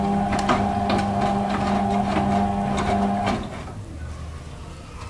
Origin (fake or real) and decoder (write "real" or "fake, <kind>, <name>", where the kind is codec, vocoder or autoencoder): real